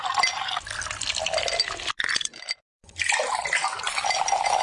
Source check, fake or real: real